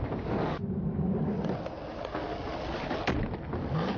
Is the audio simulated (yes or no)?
no